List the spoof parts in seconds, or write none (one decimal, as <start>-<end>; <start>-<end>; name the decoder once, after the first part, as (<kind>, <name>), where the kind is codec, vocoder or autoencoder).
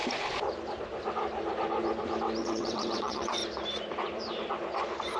2.4-3.4 (vocoder, WaveNeXt)